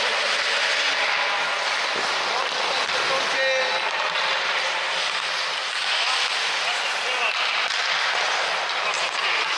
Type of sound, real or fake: real